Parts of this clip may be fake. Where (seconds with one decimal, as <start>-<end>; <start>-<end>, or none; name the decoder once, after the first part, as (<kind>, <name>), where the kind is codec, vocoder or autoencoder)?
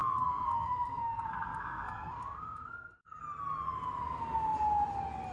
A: 0.0-3.2 (codec, SNAC)